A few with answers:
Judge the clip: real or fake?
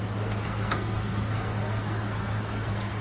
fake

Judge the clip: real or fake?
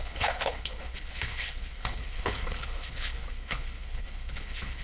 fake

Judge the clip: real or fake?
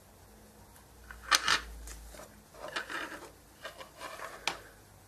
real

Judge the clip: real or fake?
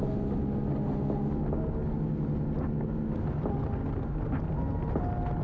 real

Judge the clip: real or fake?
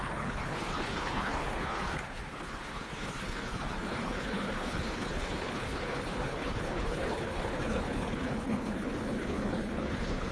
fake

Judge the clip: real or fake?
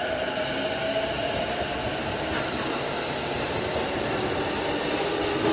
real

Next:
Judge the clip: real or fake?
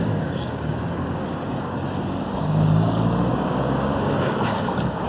fake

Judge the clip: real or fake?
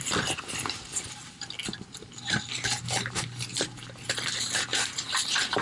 real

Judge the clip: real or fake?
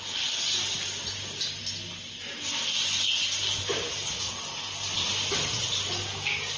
real